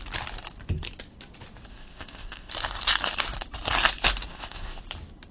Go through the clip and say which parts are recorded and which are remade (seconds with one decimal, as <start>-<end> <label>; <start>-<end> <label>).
0.0-1.7 recorded; 1.7-2.5 remade; 2.5-4.3 recorded; 4.3-4.8 remade; 4.8-5.3 recorded